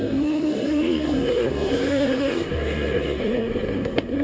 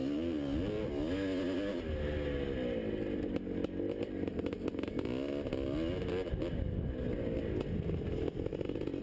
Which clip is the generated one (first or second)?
first